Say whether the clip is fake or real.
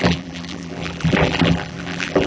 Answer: fake